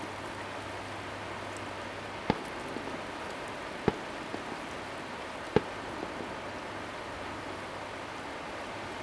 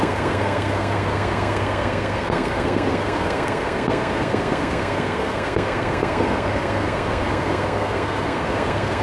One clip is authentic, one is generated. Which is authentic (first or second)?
first